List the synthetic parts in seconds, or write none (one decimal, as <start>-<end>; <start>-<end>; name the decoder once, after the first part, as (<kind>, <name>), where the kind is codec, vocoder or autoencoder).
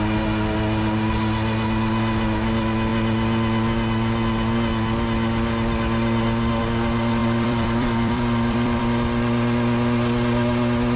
7.2-8.8 (vocoder, BigVGAN v2)